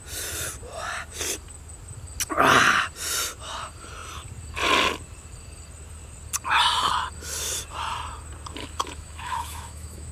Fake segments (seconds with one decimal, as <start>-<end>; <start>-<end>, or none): 8.6-10.1